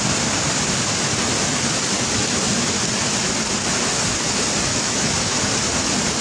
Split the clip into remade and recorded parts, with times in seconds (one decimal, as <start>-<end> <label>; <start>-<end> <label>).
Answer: 0.0-4.7 recorded; 4.7-5.4 remade; 5.4-6.2 recorded